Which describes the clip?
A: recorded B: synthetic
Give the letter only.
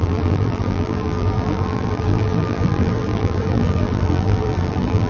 B